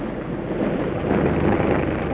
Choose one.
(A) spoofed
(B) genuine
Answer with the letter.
B